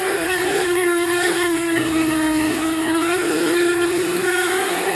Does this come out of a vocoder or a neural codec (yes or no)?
yes